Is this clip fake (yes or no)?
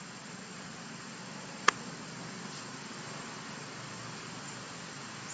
no